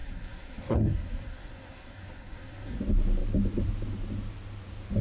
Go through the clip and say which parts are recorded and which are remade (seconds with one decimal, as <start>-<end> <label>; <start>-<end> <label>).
0.0-2.8 remade; 2.8-5.0 recorded